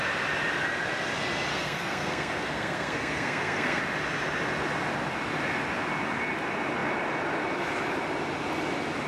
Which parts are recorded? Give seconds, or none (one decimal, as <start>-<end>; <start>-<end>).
0.0-1.5; 3.8-9.1